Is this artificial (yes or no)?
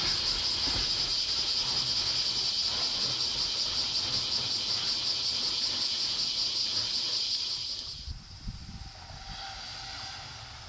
no